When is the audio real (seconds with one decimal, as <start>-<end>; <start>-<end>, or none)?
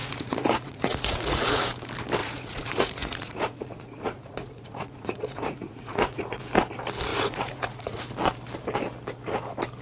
1.6-2.2; 6.4-7.1; 8.0-9.8